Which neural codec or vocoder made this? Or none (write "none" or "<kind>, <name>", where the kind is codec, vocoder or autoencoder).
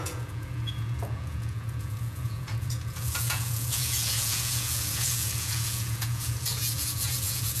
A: vocoder, Vocos